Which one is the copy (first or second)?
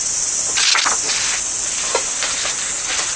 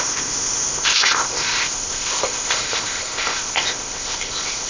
second